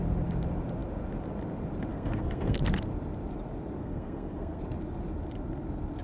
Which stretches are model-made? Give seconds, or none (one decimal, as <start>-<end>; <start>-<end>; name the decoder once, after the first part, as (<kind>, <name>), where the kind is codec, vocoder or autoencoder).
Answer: 1.9-2.6 (codec, SNAC); 3.8-4.6

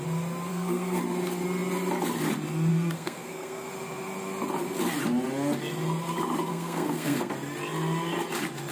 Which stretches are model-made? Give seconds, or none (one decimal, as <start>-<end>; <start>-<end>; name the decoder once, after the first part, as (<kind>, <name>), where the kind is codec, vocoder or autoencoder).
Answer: 0.5-1.0 (codec, SNAC); 2.7-3.7; 6.5-7.3

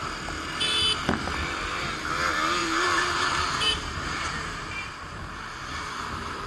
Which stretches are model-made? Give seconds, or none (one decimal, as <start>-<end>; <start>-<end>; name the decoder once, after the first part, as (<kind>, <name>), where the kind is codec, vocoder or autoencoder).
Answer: 2.6-6.5 (vocoder, BigVGAN v2)

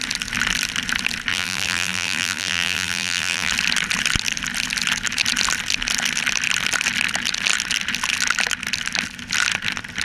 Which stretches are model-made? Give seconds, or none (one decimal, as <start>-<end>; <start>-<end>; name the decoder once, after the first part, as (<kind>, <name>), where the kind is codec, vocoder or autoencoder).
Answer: 1.3-3.5 (vocoder, BigVGAN v2)

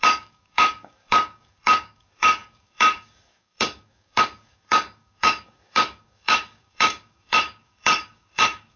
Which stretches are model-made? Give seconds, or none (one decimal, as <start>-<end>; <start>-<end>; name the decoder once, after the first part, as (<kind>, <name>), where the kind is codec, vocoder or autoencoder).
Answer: 0.0-8.8 (codec, DAC)